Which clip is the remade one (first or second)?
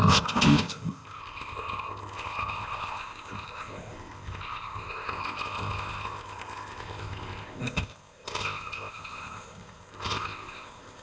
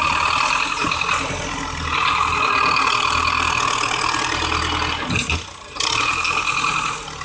first